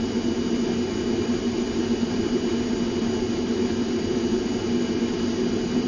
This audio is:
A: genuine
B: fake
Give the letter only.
A